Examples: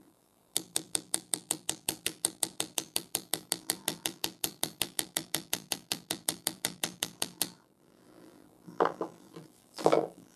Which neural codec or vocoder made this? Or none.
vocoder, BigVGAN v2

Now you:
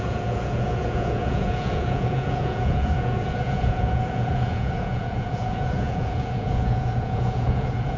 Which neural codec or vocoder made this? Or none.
vocoder, Vocos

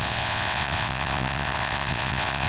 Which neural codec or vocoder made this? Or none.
vocoder, WaveNeXt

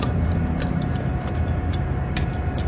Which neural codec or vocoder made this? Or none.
vocoder, BigVGAN v2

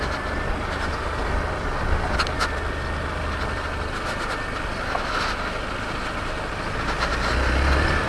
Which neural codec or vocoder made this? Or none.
none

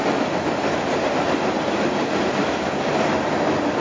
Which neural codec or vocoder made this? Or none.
none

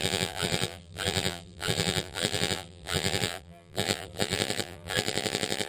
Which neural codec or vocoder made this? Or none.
vocoder, BigVGAN v2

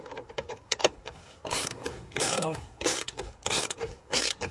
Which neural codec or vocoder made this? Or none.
codec, SNAC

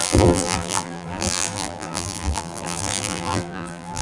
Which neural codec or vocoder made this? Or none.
vocoder, BigVGAN v2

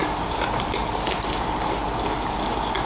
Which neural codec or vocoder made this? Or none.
none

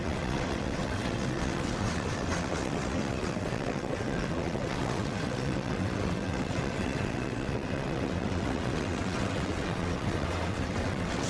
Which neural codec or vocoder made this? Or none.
vocoder, WaveNeXt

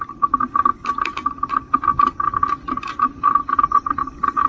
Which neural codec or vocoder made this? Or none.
none